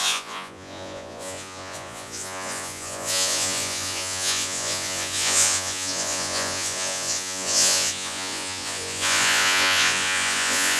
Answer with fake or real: fake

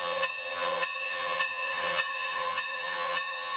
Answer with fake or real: fake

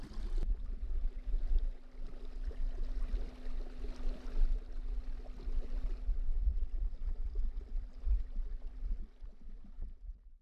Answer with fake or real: real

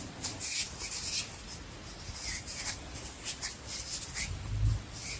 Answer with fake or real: real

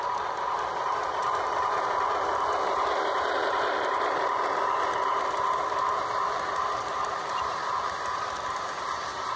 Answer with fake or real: fake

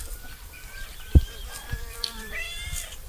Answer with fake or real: fake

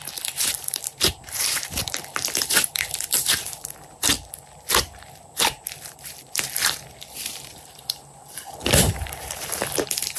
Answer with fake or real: fake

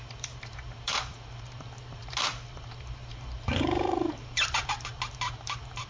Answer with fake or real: fake